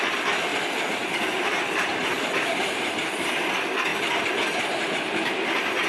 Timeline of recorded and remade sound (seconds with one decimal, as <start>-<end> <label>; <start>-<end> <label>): 0.0-0.5 recorded; 0.5-3.5 remade; 3.5-5.9 recorded